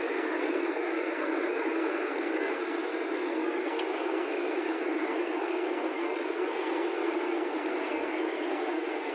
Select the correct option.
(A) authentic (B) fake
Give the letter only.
B